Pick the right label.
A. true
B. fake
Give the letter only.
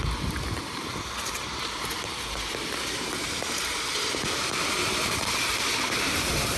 B